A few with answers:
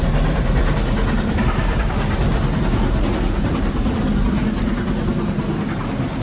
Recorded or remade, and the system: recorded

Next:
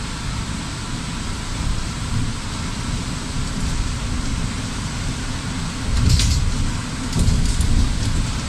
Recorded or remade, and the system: recorded